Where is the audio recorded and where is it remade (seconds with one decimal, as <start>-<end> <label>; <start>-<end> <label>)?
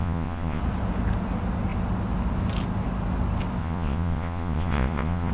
0.0-0.6 remade; 0.6-3.6 recorded; 3.6-5.3 remade